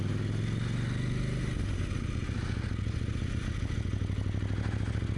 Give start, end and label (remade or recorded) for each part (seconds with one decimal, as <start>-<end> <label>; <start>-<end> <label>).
0.0-5.2 recorded